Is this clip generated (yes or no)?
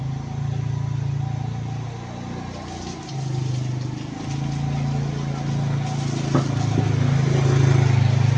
no